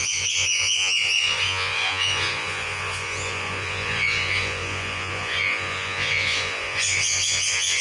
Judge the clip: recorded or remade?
remade